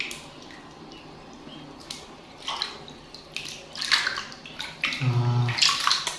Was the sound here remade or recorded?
recorded